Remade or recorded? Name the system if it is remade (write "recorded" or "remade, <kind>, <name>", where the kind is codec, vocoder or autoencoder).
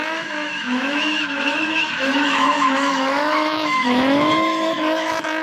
remade, autoencoder, DAC-VAE